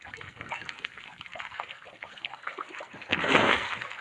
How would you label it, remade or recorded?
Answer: remade